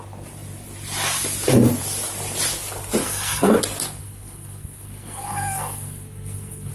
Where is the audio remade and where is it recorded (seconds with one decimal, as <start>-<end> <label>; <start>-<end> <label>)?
0.0-3.0 recorded; 3.0-3.6 remade; 3.6-4.0 recorded; 4.0-6.7 remade

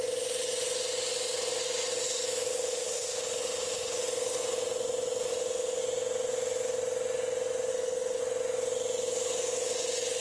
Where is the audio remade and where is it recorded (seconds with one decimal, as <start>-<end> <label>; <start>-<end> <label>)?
0.0-2.5 recorded; 2.5-4.0 remade; 4.0-5.3 recorded; 5.3-5.8 remade; 5.8-7.7 recorded; 7.7-8.2 remade; 8.2-10.2 recorded

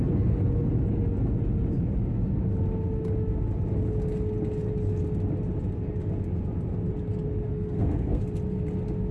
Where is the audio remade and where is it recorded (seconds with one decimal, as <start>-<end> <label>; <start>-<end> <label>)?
0.0-7.5 recorded; 7.5-8.2 remade; 8.2-9.1 recorded